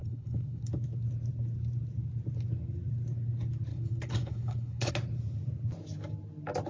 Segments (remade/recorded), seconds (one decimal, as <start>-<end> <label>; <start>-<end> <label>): 0.0-0.7 remade; 0.7-3.7 recorded; 3.7-4.9 remade; 4.9-6.7 recorded